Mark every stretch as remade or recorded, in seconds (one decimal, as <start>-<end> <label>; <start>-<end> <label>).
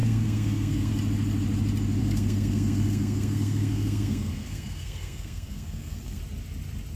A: 0.0-0.9 remade; 0.9-2.0 recorded; 2.0-6.2 remade; 6.2-7.0 recorded